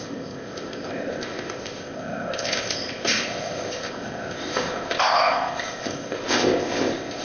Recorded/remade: remade